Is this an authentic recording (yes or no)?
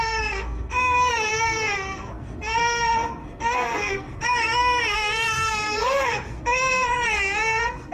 no